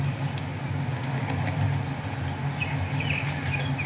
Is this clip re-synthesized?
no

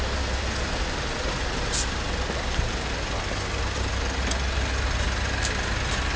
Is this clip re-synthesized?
no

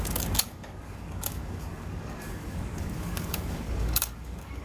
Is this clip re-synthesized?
yes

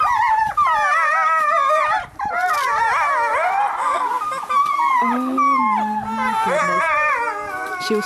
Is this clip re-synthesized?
no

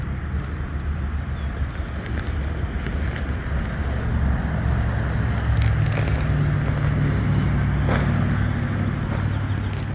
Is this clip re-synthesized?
no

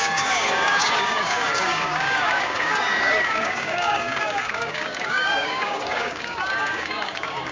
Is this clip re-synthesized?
yes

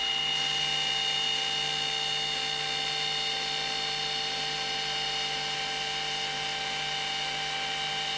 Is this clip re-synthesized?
no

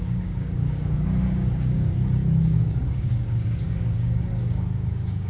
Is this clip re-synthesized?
yes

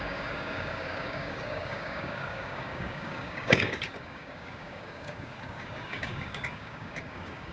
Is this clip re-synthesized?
yes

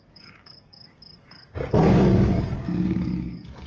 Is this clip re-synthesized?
yes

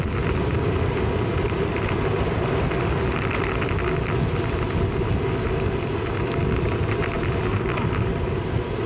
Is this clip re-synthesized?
no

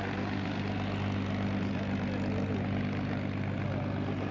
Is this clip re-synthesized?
no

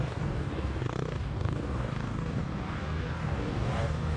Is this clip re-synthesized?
yes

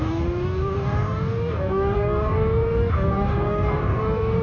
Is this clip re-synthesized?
yes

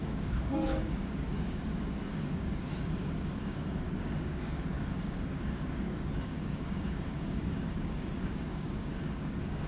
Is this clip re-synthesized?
yes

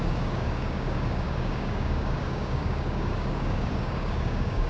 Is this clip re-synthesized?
yes